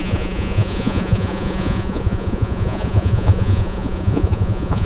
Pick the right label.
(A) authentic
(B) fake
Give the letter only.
B